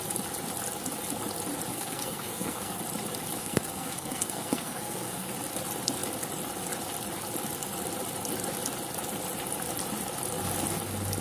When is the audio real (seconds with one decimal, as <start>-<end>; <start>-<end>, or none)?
0.0-1.7; 2.8-3.4; 5.3-11.2